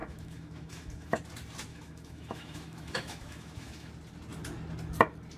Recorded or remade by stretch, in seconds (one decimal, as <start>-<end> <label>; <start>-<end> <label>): 0.0-1.2 remade; 1.2-1.7 recorded; 1.7-3.9 remade; 3.9-5.4 recorded

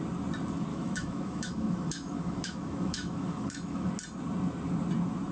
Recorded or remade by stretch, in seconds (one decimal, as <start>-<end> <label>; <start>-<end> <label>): 0.0-0.7 recorded; 0.7-3.9 remade; 3.9-5.3 recorded

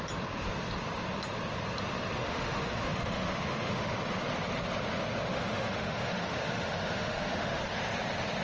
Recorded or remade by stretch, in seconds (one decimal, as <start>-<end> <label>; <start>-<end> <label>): 0.0-2.2 recorded; 2.2-3.9 remade; 3.9-5.3 recorded; 5.3-7.6 remade; 7.6-8.4 recorded

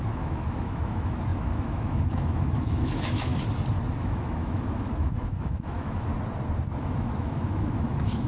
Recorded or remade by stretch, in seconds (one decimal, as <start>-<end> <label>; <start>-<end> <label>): 0.0-3.3 remade; 3.3-4.0 recorded; 4.0-6.1 remade; 6.1-6.8 recorded; 6.8-8.3 remade

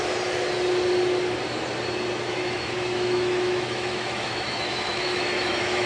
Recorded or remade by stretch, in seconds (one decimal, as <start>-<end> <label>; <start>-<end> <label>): 0.0-2.3 recorded; 2.3-5.9 remade

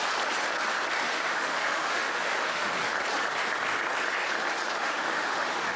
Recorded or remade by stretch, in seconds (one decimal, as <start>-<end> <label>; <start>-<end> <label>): 0.0-1.0 recorded; 1.0-2.8 remade; 2.8-4.8 recorded; 4.8-5.8 remade

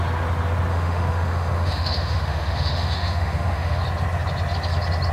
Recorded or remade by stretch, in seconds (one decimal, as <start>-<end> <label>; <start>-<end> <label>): 0.0-0.7 recorded; 0.7-3.8 remade; 3.8-5.1 recorded